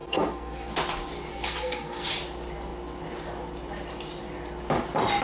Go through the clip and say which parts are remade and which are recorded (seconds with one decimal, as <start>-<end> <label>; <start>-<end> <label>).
0.0-0.7 remade; 0.7-1.3 recorded; 1.3-2.1 remade; 2.1-5.2 recorded